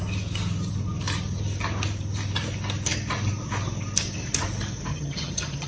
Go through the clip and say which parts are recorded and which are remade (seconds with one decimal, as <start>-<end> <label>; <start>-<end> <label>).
0.0-4.9 recorded; 4.9-5.7 remade